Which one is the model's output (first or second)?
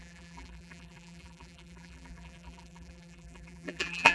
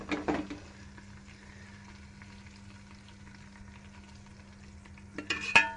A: first